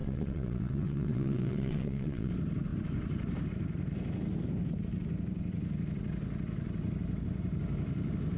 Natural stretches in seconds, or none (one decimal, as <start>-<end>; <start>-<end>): 2.3-8.4